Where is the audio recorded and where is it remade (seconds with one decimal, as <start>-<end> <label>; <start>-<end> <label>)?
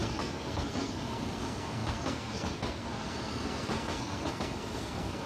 0.0-5.3 remade